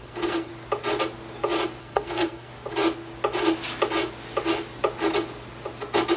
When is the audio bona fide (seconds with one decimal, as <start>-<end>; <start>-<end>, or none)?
0.5-1.8; 2.5-6.2